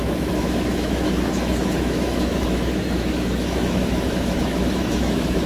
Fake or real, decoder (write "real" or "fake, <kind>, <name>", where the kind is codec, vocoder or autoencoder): fake, autoencoder, DAC-VAE